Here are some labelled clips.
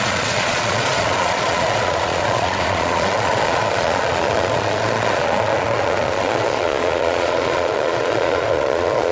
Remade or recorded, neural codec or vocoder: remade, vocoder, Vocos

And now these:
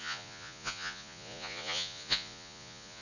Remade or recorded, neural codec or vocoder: remade, vocoder, Vocos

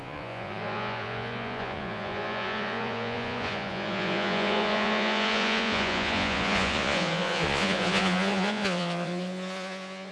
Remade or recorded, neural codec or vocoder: remade, vocoder, Vocos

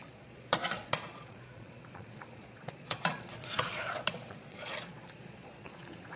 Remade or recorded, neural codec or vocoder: remade, vocoder, Vocos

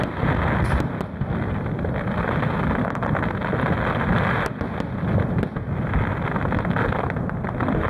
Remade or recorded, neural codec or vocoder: recorded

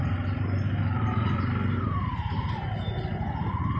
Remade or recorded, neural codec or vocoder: recorded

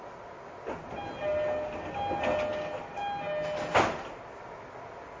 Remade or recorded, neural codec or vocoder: recorded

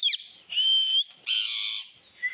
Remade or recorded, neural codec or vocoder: recorded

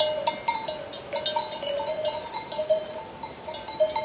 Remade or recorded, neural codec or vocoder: recorded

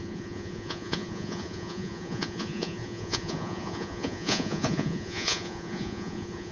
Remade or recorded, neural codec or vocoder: remade, vocoder, Vocos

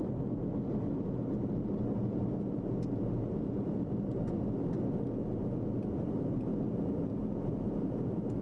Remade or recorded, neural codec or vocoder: recorded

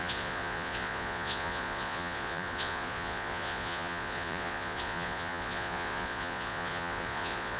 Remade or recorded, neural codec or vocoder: remade, vocoder, Vocos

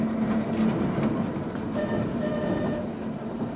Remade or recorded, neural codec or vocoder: recorded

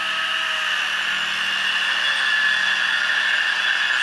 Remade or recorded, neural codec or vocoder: recorded